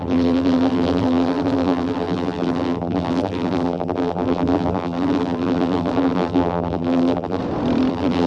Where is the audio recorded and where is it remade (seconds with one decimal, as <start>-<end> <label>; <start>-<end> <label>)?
0.0-7.4 remade; 7.4-7.9 recorded; 7.9-8.3 remade